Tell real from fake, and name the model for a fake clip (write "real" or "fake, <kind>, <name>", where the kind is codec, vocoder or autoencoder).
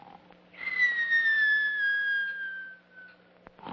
real